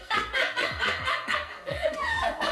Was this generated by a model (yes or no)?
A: yes